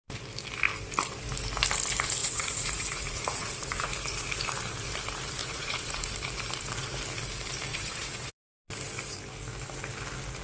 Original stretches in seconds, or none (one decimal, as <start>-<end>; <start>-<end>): 0.0-2.2; 3.9-5.4; 6.1-7.7; 8.6-10.4